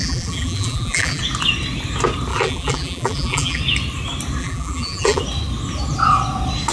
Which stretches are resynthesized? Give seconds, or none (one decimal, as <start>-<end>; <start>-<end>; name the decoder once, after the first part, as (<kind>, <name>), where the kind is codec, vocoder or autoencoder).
0.0-1.2 (vocoder, BigVGAN v2); 2.3-3.6; 4.4-5.2